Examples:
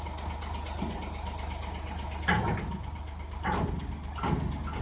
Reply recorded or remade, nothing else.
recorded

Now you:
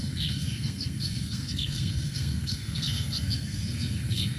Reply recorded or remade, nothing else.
remade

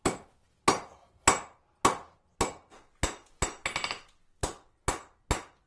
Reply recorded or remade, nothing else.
recorded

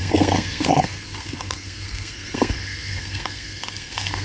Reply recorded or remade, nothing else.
remade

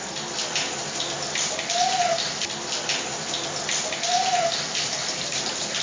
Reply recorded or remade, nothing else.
remade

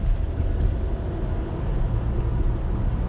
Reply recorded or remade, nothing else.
recorded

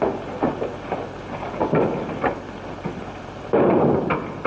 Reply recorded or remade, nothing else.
recorded